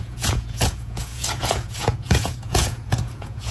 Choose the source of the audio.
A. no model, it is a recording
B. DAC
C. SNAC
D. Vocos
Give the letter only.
D